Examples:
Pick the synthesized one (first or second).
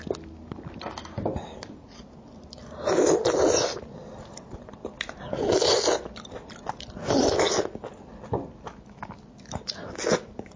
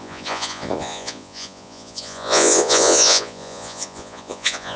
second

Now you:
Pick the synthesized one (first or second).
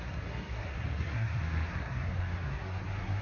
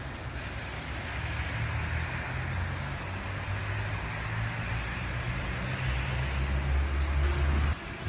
first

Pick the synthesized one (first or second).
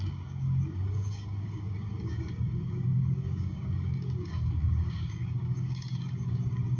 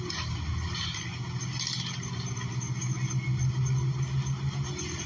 first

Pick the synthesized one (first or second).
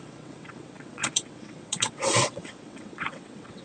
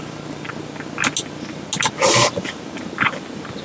first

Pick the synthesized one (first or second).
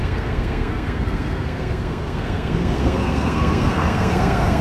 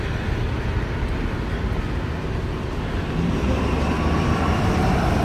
first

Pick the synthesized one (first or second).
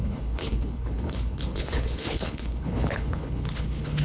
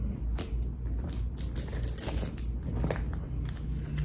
first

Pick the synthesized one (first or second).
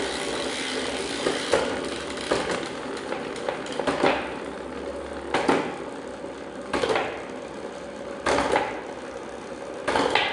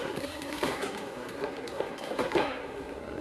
second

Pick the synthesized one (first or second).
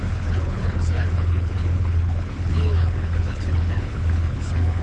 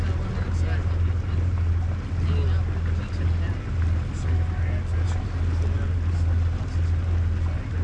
first